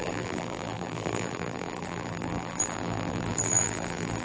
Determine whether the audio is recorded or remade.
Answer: remade